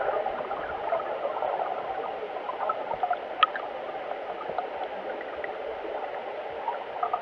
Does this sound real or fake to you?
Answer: real